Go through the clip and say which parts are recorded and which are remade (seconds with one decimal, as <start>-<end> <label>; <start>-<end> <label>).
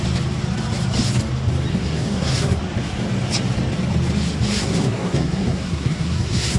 0.0-1.7 recorded; 1.7-2.6 remade; 2.6-4.6 recorded; 4.6-6.6 remade